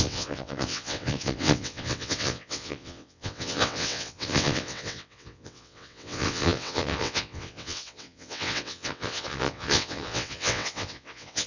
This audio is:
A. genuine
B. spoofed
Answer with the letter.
B